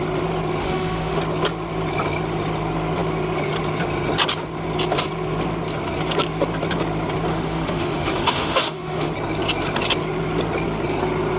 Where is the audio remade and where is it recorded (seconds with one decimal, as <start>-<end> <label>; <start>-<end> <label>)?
0.0-0.6 recorded; 0.6-1.2 remade; 1.2-7.3 recorded; 7.3-9.1 remade; 9.1-11.4 recorded